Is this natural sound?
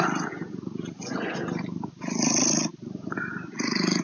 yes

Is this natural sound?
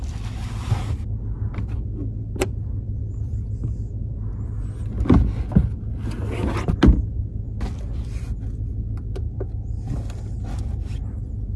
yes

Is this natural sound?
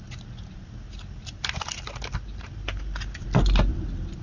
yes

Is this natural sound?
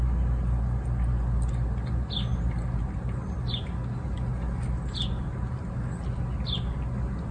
yes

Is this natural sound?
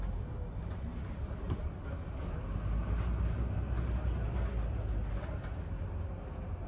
yes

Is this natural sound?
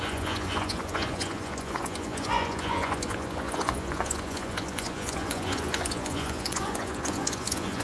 no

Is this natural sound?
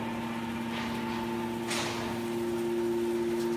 yes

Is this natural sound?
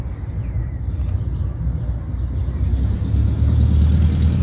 yes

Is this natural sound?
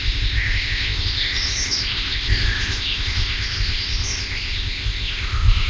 no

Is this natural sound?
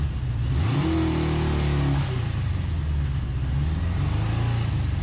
yes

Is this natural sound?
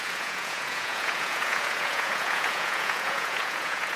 no